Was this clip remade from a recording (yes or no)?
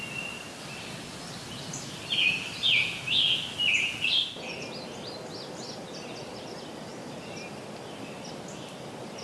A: no